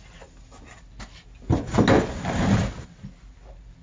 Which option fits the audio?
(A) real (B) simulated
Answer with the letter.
A